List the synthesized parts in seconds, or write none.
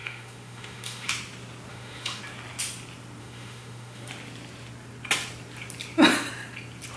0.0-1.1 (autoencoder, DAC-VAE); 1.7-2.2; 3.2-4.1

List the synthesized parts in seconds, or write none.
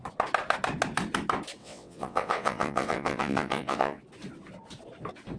1.6-4.0 (vocoder, WaveNeXt)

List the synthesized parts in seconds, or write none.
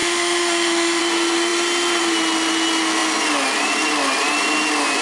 0.0-1.0 (autoencoder, DAC-VAE)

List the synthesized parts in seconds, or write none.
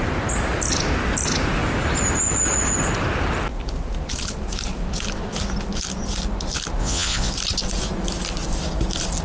6.8-7.3 (vocoder, Vocos)